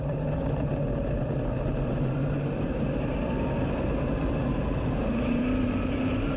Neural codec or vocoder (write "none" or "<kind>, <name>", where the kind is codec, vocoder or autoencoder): vocoder, BigVGAN v2